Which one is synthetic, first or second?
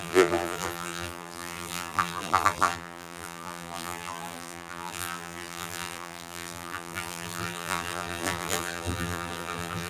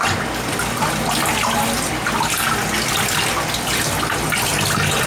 first